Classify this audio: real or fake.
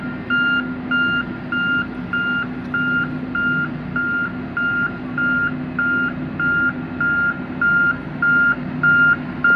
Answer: real